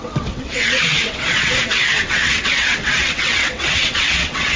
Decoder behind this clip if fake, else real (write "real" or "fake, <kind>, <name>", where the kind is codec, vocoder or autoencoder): fake, vocoder, WaveNeXt